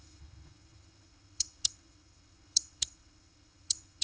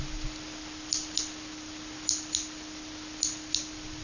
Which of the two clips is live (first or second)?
second